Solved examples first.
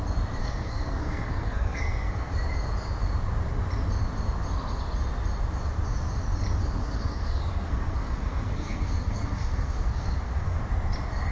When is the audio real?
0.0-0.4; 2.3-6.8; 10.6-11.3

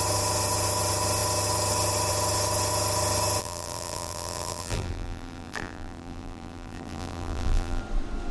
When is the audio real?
0.0-3.4; 7.8-8.3

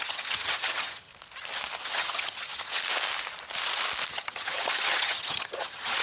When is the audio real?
1.1-1.8; 2.8-4.1

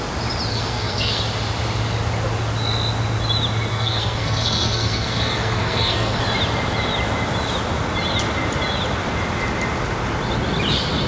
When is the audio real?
0.0-0.5; 1.2-3.7; 6.2-11.1